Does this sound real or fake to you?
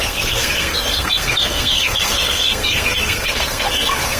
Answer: fake